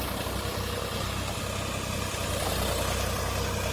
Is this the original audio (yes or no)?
yes